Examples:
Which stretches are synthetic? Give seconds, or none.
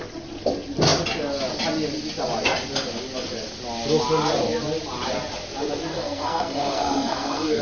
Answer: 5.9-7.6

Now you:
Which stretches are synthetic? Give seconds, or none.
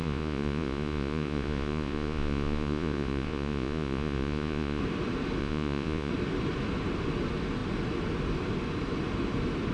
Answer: 0.0-4.8; 5.4-6.1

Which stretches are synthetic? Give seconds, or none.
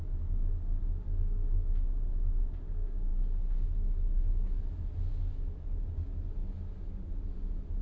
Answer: none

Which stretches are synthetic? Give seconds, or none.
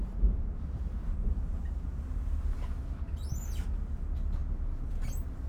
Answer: none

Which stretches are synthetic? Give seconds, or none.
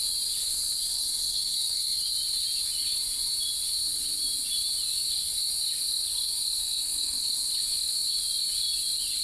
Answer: 0.9-2.0; 6.6-7.2